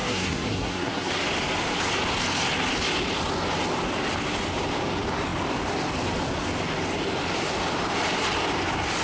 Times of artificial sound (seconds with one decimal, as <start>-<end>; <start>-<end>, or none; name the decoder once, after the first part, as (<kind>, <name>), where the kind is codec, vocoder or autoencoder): 0.0-1.1 (codec, SNAC)